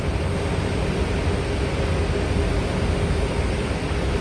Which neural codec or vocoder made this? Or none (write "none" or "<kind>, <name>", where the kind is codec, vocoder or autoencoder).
none